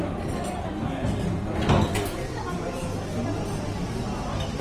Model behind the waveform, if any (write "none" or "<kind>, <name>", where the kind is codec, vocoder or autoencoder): none